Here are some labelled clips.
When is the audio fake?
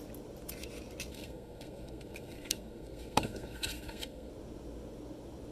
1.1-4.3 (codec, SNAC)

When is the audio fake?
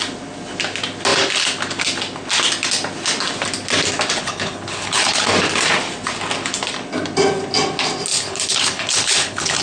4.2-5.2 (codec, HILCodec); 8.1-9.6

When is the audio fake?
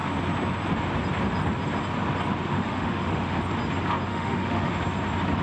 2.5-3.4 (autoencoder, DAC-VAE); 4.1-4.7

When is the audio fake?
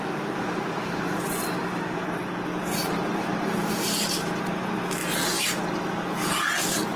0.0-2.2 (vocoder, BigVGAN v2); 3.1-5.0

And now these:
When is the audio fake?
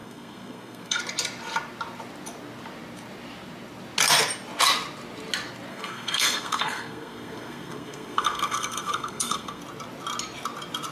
0.0-1.0 (codec, SNAC); 5.7-9.6